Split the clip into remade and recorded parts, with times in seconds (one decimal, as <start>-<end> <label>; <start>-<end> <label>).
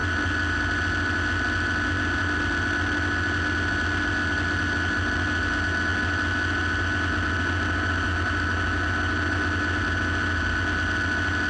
0.0-11.5 recorded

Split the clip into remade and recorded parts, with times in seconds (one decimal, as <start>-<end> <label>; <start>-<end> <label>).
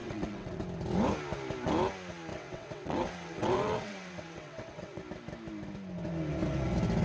0.0-0.6 remade; 0.6-2.3 recorded; 2.3-5.0 remade; 5.0-7.0 recorded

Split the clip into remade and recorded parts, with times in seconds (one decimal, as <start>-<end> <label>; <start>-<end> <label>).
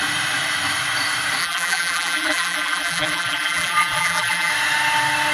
0.0-1.4 recorded; 1.4-4.5 remade; 4.5-5.3 recorded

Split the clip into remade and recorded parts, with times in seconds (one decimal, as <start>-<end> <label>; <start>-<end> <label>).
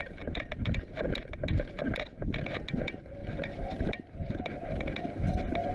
0.0-0.5 remade; 0.5-3.2 recorded; 3.2-3.9 remade; 3.9-5.7 recorded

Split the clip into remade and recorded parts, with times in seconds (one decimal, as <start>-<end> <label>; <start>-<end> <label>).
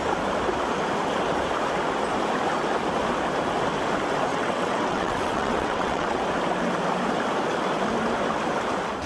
0.0-4.3 recorded; 4.3-6.2 remade; 6.2-9.1 recorded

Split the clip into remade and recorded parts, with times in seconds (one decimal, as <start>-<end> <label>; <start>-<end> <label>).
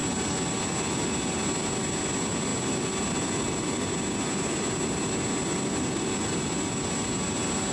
0.0-7.7 recorded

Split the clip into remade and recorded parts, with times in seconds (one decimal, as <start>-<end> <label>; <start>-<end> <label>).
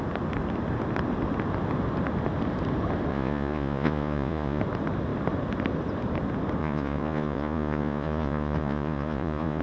0.0-3.1 recorded; 3.1-4.6 remade; 4.6-6.6 recorded; 6.6-9.6 remade